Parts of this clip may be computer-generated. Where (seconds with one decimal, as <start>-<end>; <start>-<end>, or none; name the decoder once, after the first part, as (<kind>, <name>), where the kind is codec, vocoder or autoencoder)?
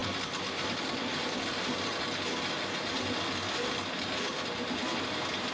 none